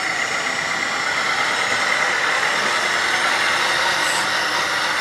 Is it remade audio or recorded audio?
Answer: recorded